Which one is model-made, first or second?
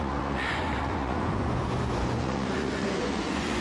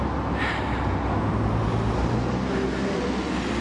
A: first